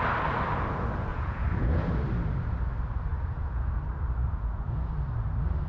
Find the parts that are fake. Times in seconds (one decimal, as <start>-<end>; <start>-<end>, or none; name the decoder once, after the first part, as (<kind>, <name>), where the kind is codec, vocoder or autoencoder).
1.1-1.9 (vocoder, Vocos); 3.1-3.7; 4.2-4.9